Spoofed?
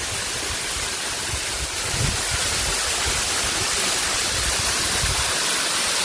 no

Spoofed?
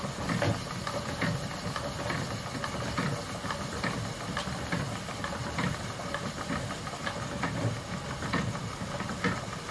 no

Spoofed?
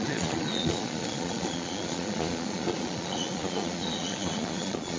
yes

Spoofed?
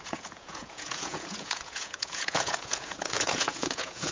yes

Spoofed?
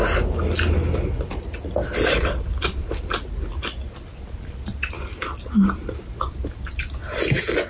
no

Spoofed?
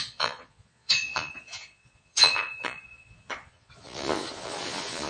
yes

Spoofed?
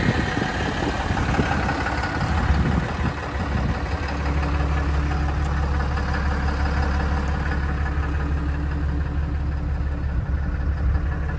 no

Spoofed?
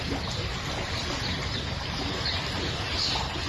no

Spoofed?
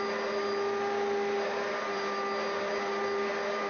no